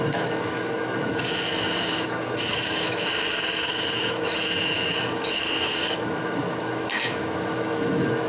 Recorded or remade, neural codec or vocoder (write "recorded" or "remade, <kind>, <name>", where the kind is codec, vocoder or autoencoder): remade, autoencoder, DAC-VAE